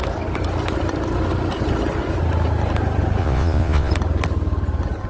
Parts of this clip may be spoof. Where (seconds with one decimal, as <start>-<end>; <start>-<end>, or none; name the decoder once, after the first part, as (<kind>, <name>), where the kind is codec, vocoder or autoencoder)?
3.2-3.9 (vocoder, Vocos)